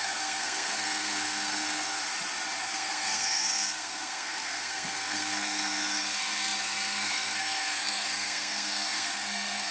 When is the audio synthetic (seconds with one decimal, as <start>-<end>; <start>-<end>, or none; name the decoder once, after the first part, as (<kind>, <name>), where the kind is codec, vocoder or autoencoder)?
0.0-2.0 (codec, SNAC); 2.6-9.7